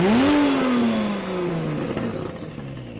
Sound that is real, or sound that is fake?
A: real